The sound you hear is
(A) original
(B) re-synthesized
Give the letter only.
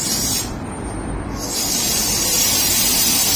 B